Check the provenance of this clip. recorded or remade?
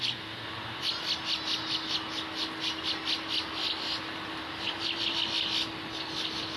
recorded